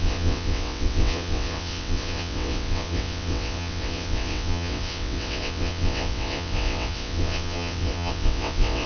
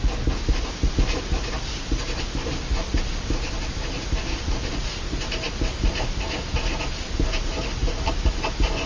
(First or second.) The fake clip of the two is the first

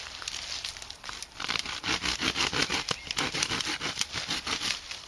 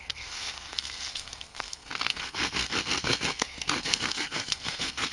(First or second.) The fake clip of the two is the second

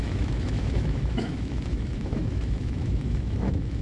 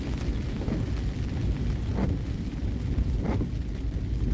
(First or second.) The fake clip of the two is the first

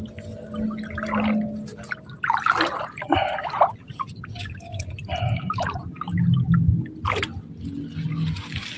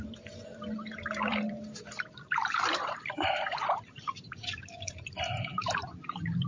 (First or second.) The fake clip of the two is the second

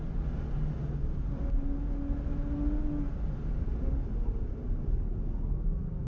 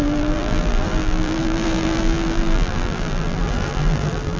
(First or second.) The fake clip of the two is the second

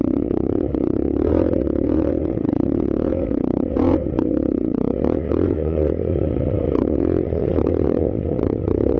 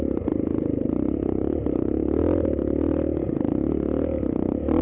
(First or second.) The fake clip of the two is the first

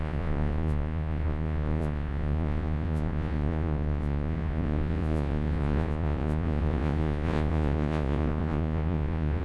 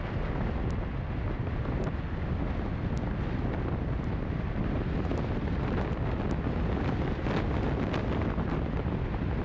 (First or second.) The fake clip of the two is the first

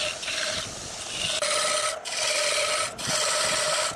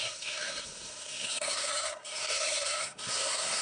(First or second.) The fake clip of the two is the second